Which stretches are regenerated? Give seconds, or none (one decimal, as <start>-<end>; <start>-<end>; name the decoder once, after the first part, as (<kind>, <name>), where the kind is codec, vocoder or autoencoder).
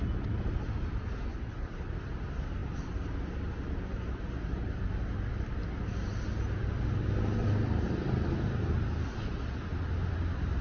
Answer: 1.3-1.9 (codec, HILCodec)